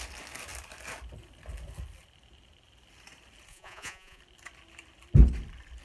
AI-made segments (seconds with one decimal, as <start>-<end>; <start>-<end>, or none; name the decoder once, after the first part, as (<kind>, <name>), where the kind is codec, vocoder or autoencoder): 3.5-4.2 (vocoder, Vocos)